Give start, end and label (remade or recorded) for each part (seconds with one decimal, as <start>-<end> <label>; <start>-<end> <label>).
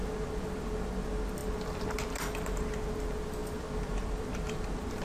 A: 0.0-3.4 recorded; 3.4-4.3 remade; 4.3-5.0 recorded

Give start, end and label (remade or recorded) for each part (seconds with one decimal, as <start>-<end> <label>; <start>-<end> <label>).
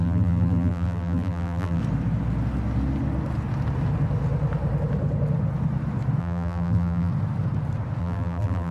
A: 0.0-1.8 remade; 1.8-6.2 recorded; 6.2-7.1 remade; 7.1-8.0 recorded; 8.0-8.7 remade